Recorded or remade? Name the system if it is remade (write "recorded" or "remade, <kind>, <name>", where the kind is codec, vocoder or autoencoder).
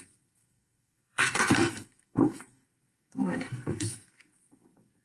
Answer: remade, codec, SNAC